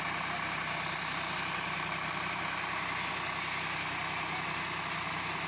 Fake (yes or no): no